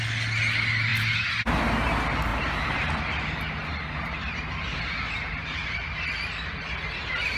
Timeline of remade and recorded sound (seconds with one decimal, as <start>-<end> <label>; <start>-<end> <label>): 0.0-2.3 recorded; 2.3-3.0 remade; 3.0-3.7 recorded; 3.7-6.1 remade; 6.1-7.4 recorded